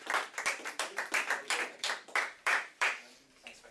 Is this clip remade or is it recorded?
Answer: remade